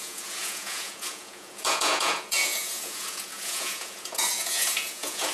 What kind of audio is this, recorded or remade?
remade